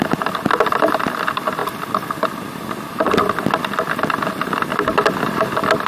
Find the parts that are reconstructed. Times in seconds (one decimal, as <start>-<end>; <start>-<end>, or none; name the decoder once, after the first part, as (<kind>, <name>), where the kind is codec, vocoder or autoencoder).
none